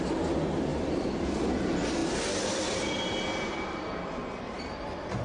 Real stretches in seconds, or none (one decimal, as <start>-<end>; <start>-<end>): 0.0-0.7; 1.3-2.0; 3.0-5.2